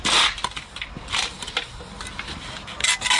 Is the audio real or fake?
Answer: real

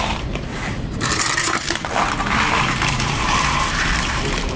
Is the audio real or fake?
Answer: fake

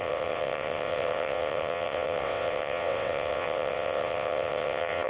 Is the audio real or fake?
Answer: fake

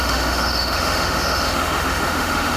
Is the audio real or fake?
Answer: fake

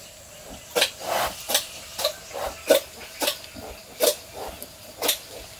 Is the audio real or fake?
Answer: real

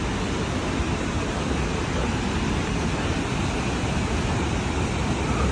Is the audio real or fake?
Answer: real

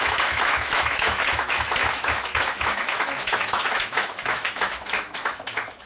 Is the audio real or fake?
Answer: fake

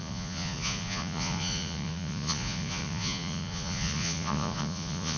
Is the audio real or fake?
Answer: fake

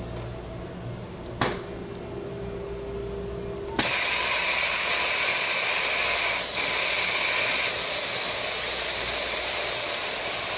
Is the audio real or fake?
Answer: real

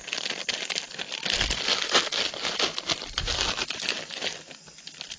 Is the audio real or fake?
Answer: real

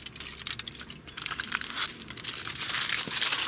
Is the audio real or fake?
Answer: real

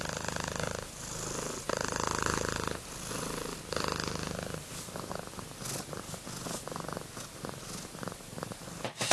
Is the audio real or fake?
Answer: real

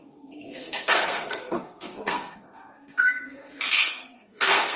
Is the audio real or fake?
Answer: fake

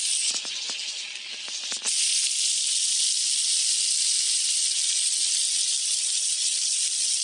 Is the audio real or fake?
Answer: real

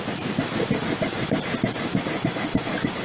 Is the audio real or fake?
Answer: real